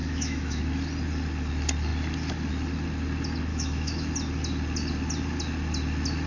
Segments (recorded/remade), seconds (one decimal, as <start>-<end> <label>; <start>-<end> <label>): 0.0-0.6 remade; 0.6-3.5 recorded; 3.5-4.1 remade; 4.1-6.3 recorded